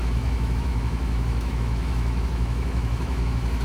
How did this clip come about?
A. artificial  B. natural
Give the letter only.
A